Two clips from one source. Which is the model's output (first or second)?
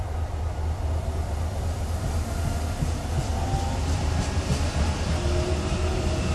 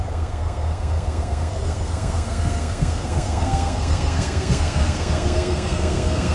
second